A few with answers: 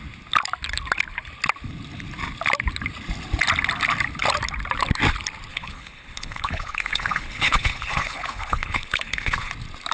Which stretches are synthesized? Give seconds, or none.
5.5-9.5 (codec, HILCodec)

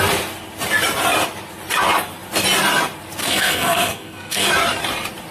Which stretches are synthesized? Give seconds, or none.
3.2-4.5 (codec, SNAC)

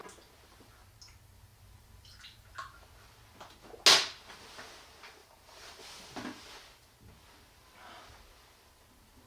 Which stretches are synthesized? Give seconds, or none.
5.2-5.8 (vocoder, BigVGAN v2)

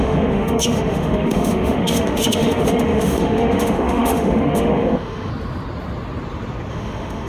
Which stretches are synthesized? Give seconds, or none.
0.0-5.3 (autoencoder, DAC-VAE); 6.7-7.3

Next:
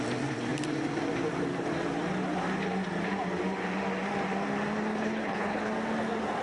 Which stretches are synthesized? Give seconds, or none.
4.9-5.7 (codec, HILCodec)